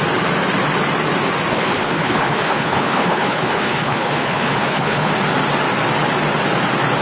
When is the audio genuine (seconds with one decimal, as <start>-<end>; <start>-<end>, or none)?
0.0-1.5; 5.1-7.0